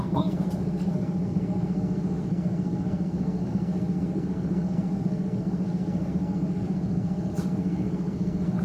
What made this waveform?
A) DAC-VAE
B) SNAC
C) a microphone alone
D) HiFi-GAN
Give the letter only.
B